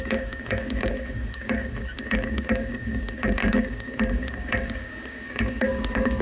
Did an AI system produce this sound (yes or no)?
yes